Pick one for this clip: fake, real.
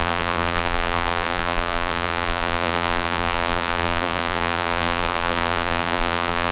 fake